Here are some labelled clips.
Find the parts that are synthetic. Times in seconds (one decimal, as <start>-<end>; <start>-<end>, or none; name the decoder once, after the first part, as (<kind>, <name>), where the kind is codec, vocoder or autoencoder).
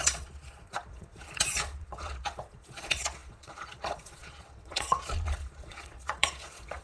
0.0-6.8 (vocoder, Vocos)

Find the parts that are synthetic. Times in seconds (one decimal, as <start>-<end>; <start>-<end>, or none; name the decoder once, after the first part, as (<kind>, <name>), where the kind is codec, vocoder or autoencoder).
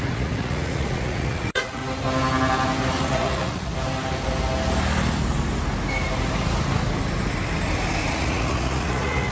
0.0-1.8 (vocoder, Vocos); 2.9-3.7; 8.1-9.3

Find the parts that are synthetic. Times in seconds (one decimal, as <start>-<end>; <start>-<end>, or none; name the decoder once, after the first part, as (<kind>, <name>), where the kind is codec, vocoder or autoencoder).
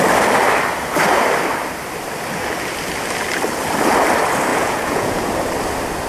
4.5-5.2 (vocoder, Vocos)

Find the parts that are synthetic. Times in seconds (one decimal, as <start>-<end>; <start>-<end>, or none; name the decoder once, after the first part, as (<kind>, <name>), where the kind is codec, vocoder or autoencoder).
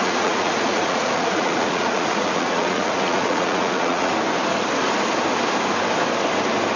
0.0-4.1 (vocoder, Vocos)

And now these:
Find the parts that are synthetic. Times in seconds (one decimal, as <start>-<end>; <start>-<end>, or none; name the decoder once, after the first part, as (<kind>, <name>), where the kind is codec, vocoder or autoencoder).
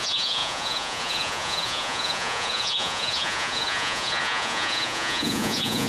0.0-5.9 (vocoder, Vocos)